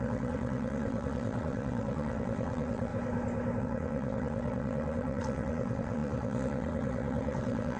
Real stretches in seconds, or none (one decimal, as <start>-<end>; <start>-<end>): 2.9-3.6